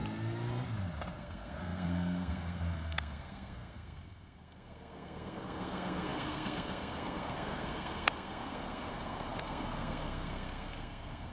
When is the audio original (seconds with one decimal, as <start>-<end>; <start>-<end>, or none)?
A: 0.0-1.2